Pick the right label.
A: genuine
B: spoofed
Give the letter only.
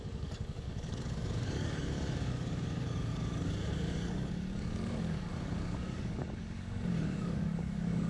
B